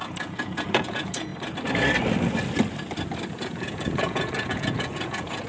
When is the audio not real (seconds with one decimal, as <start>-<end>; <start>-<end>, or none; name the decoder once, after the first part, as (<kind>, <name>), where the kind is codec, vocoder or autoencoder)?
0.0-1.3 (vocoder, Vocos); 3.3-5.5